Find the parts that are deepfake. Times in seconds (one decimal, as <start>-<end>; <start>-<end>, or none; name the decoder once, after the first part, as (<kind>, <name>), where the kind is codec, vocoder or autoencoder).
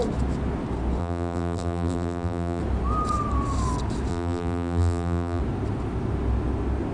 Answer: 1.0-2.6 (vocoder, BigVGAN v2); 4.1-5.4